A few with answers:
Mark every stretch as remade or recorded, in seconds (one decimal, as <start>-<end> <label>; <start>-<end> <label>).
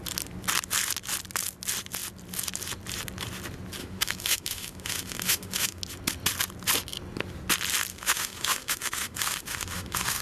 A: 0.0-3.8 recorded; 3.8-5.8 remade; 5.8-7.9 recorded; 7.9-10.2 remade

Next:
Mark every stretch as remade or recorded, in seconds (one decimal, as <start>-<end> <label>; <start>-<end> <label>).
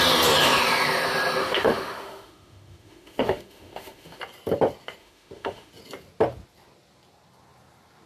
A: 0.0-1.4 recorded; 1.4-4.2 remade; 4.2-5.0 recorded; 5.0-5.7 remade; 5.7-8.1 recorded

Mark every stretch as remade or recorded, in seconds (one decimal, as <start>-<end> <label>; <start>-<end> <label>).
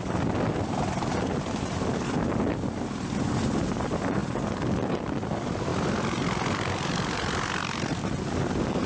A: 0.0-8.9 recorded